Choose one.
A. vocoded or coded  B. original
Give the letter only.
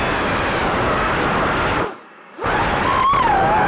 B